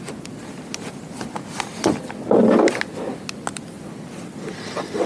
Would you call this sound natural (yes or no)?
yes